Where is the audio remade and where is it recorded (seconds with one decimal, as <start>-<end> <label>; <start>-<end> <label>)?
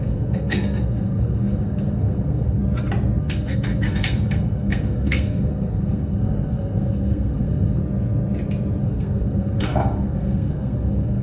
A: 0.0-2.6 remade; 2.6-3.2 recorded; 3.2-7.8 remade; 7.8-8.8 recorded; 8.8-11.2 remade